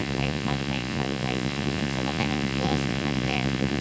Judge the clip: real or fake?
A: fake